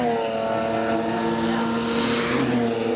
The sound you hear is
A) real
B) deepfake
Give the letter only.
A